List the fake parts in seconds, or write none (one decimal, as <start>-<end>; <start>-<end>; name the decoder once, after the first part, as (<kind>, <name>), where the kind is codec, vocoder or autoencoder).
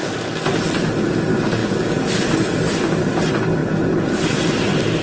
0.0-0.6 (vocoder, BigVGAN v2)